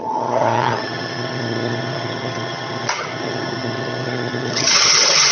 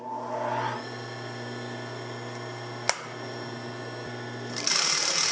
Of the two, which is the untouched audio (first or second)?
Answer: second